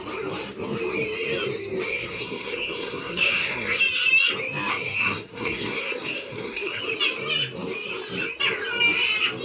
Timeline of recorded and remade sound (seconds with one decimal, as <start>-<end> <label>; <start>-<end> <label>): 0.0-1.9 recorded; 1.9-3.8 remade; 3.8-4.7 recorded; 4.7-6.8 remade; 6.8-9.4 recorded